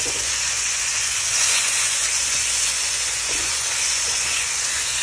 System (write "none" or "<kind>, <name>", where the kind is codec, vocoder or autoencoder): vocoder, Vocos